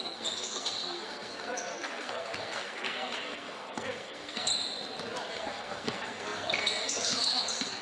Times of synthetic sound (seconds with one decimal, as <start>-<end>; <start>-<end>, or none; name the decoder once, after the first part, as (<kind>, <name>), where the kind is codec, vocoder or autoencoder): 0.0-4.5 (codec, SNAC); 5.3-7.8